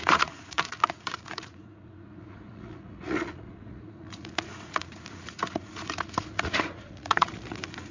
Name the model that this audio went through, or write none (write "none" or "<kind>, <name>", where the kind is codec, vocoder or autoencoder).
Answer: vocoder, Vocos